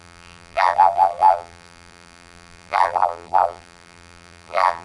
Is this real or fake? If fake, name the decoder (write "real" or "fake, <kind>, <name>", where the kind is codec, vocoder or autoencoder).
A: fake, vocoder, BigVGAN v2